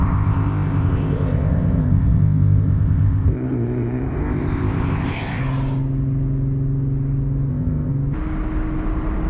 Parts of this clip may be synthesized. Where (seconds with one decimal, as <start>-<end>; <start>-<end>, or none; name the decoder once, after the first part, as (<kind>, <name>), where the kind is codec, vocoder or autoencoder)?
0.0-5.4 (codec, ZipCodec); 7.5-7.9